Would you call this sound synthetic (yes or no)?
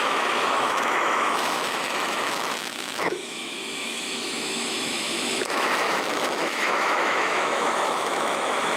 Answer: yes